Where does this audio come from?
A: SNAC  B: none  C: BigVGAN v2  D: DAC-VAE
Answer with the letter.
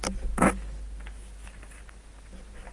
B